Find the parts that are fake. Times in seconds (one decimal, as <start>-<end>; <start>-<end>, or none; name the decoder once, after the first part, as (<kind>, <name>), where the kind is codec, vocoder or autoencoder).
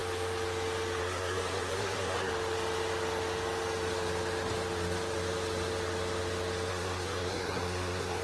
1.0-2.3 (codec, SNAC); 6.7-8.2